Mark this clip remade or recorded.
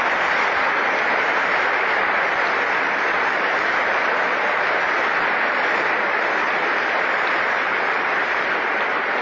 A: remade